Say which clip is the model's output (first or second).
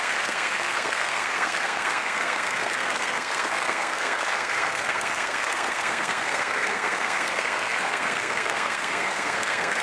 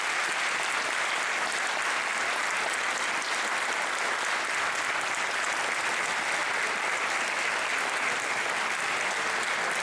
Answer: first